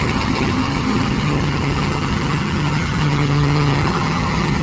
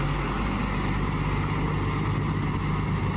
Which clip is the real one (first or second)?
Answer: second